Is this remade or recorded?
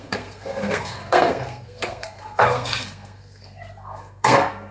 remade